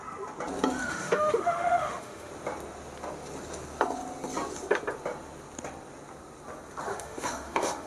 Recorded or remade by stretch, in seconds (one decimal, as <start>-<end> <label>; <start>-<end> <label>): 0.0-0.8 recorded; 0.8-2.3 remade; 2.3-6.9 recorded; 6.9-7.9 remade

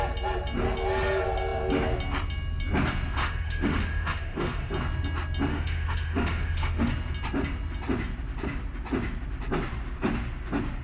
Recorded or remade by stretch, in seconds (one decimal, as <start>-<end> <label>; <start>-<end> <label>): 0.0-3.2 recorded; 3.2-4.7 remade; 4.7-5.5 recorded; 5.5-6.9 remade; 6.9-10.8 recorded

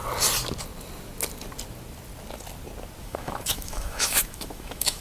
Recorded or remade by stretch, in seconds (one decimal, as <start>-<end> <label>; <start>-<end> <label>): 0.0-3.0 recorded; 3.0-5.0 remade

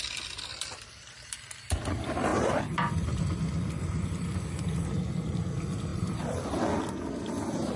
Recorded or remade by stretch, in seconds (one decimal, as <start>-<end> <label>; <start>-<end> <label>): 0.0-7.8 recorded

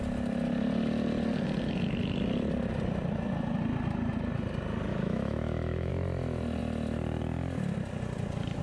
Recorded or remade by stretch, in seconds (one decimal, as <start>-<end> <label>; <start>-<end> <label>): 0.0-4.9 recorded; 4.9-5.9 remade; 5.9-8.6 recorded